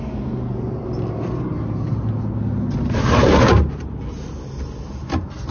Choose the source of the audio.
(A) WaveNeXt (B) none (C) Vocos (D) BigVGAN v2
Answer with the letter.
B